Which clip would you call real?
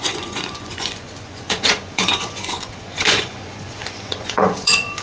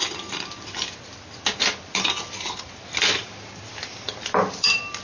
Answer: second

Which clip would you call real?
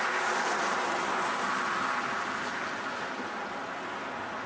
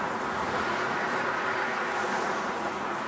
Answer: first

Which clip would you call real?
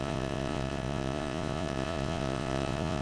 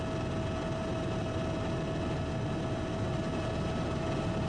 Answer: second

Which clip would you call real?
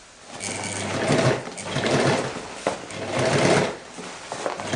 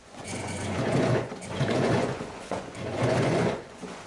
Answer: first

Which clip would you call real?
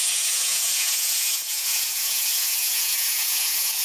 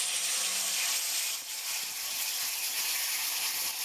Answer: second